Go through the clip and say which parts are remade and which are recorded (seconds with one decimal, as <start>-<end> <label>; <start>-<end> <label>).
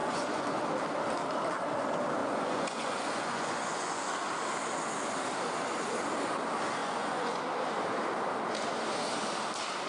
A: 0.0-0.6 remade; 0.6-2.2 recorded; 2.2-4.1 remade; 4.1-6.8 recorded; 6.8-7.4 remade; 7.4-9.9 recorded